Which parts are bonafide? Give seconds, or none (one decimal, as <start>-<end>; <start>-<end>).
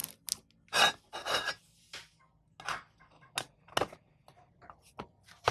0.0-5.5